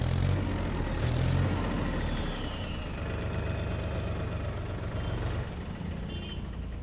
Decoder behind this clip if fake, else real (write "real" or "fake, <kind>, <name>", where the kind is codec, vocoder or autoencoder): real